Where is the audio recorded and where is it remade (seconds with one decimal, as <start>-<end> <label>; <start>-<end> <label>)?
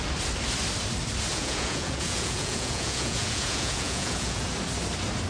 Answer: 0.0-1.3 recorded; 1.3-4.5 remade; 4.5-5.3 recorded